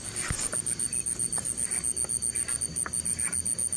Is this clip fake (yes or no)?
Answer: no